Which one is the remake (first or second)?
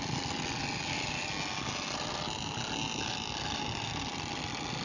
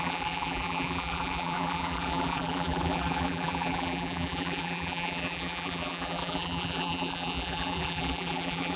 second